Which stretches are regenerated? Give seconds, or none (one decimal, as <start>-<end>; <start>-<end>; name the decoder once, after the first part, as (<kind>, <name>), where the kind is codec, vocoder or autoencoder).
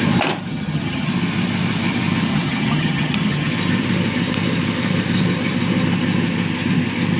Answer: 0.5-1.1 (vocoder, HiFi-GAN); 2.3-3.5